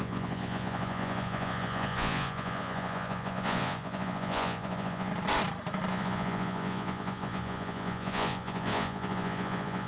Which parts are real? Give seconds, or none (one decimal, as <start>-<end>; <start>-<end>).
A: 5.1-5.9